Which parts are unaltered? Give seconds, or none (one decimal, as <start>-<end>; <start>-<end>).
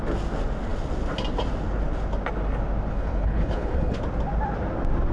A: 0.0-2.9; 4.0-5.1